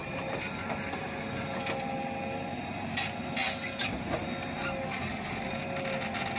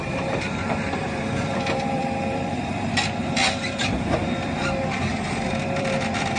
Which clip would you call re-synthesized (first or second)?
second